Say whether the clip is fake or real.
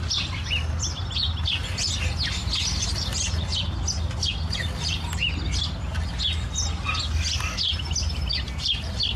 real